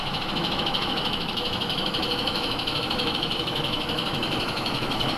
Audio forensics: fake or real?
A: fake